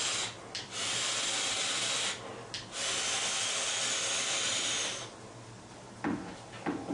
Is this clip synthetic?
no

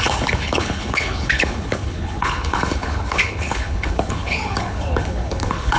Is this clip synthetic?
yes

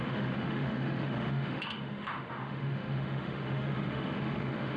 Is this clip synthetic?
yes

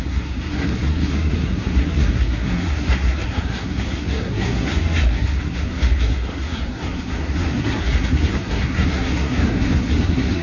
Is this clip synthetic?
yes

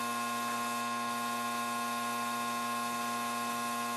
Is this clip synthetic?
no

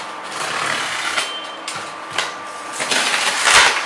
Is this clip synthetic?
no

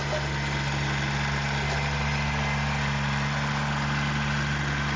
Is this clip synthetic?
no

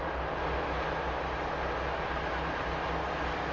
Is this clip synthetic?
no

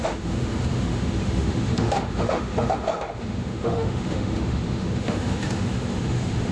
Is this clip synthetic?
yes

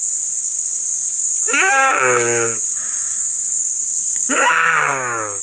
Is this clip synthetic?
yes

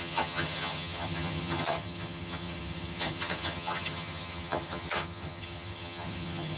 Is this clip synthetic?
yes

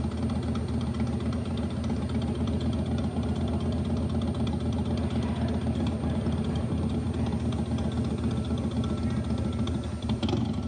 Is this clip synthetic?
no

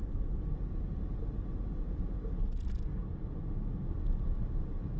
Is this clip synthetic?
no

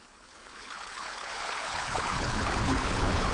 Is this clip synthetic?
yes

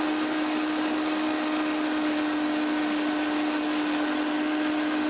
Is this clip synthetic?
no